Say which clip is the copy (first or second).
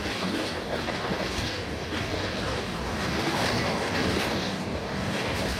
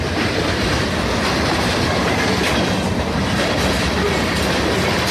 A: first